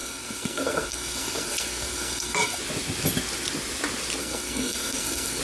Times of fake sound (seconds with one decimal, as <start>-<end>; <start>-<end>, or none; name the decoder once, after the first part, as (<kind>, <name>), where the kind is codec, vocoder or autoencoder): 0.0-2.6 (codec, SNAC); 4.2-5.4